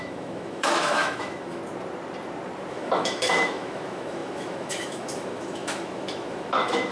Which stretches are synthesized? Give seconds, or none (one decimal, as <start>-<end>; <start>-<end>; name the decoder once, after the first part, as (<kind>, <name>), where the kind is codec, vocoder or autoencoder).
0.0-1.6 (autoencoder, DAC-VAE); 2.7-6.9